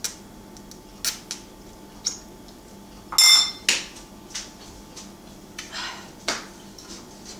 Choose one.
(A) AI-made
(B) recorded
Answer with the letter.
B